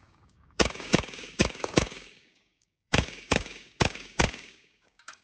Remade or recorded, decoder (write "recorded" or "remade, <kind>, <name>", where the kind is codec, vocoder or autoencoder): remade, codec, DAC